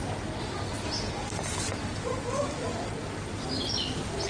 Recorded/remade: recorded